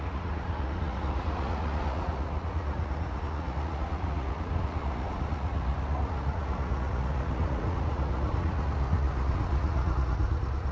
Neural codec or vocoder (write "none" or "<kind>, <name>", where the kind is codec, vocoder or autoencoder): vocoder, Vocos